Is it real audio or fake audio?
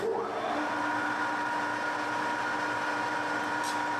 real